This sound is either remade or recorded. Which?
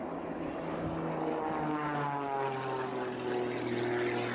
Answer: recorded